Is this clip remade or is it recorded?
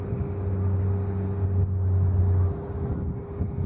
recorded